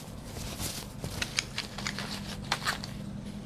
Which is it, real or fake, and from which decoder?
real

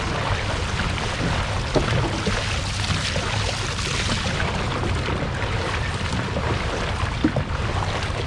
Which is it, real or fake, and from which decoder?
real